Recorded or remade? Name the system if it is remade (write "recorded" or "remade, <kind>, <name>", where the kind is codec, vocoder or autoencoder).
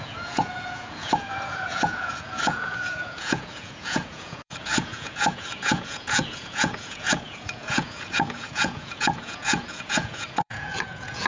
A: remade, vocoder, Vocos